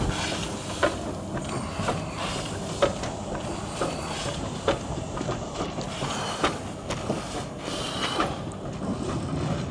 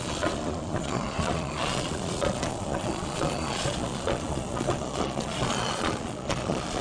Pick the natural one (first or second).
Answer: first